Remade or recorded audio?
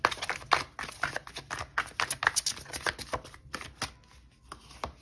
recorded